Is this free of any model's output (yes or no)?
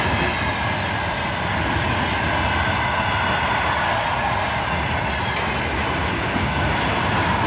yes